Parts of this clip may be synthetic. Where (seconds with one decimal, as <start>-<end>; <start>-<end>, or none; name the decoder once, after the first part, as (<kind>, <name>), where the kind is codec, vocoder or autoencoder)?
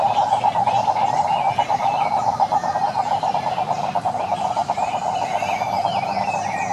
none